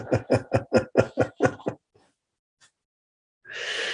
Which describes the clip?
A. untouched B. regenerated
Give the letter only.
A